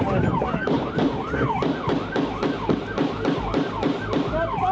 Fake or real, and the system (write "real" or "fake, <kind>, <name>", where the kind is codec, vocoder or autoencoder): real